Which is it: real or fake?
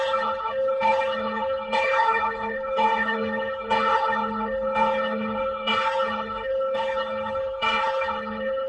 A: fake